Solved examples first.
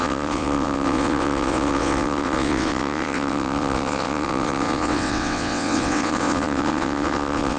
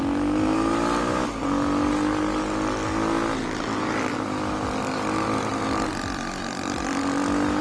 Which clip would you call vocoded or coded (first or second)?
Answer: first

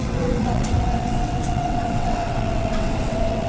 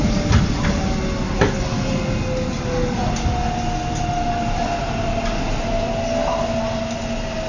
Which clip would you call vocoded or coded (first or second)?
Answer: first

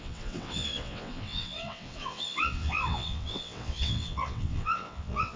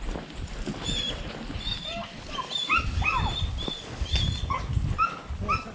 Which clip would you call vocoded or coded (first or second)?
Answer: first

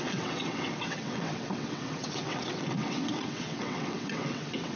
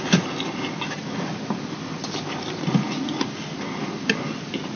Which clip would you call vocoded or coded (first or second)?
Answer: first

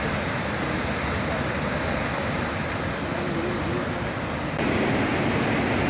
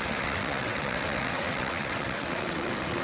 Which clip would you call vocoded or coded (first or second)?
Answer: second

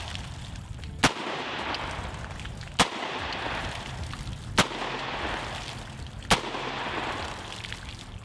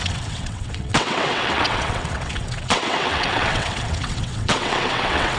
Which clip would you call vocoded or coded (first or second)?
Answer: second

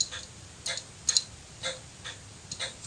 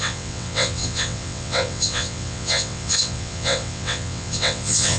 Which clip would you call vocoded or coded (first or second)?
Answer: second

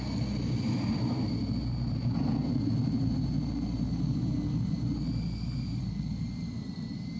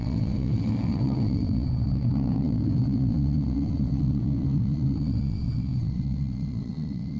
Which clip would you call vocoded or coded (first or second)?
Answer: second